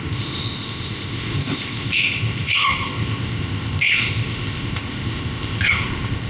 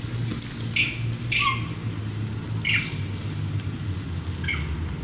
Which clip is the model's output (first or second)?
first